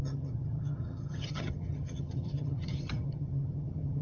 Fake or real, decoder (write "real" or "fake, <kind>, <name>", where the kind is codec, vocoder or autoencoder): fake, vocoder, HiFi-GAN